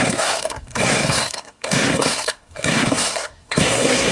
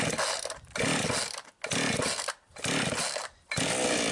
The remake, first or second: first